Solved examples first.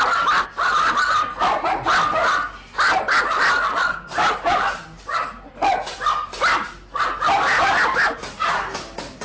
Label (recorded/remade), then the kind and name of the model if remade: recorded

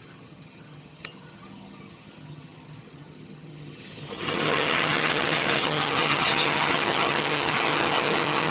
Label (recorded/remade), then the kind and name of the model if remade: remade, vocoder, HiFi-GAN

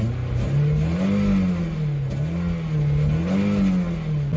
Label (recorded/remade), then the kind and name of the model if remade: recorded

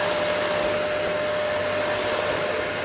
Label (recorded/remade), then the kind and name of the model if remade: recorded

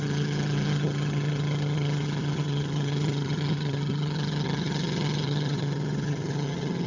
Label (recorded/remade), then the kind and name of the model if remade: remade, vocoder, HiFi-GAN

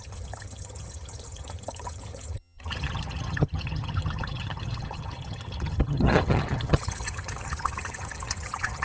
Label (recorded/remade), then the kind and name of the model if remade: remade, vocoder, HiFi-GAN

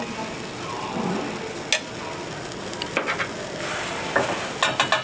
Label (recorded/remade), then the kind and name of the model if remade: recorded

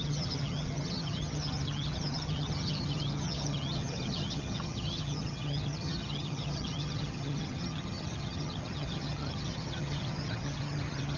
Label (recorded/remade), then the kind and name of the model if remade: remade, vocoder, HiFi-GAN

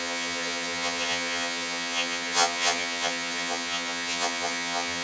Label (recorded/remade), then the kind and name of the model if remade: remade, vocoder, HiFi-GAN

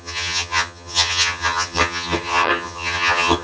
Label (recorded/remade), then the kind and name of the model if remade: remade, vocoder, HiFi-GAN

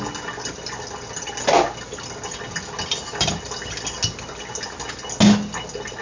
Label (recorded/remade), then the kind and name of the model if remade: recorded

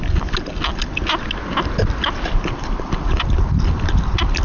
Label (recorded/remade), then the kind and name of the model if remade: recorded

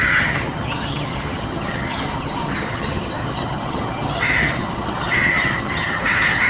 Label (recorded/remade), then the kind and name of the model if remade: remade, vocoder, HiFi-GAN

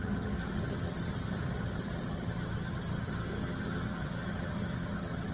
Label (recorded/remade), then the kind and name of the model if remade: remade, vocoder, HiFi-GAN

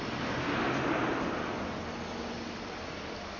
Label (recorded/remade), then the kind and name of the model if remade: recorded